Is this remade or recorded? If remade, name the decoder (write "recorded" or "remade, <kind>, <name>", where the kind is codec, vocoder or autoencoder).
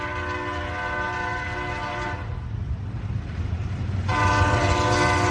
recorded